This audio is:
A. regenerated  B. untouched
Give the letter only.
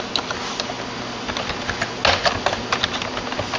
B